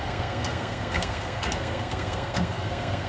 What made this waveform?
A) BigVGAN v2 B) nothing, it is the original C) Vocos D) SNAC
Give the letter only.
D